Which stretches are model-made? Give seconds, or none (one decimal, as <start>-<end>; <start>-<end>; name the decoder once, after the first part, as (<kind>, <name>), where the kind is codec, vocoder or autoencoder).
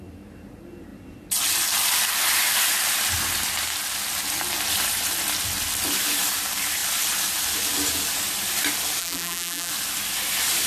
9.0-9.7 (vocoder, BigVGAN v2)